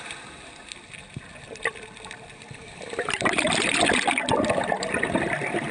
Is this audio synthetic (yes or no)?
yes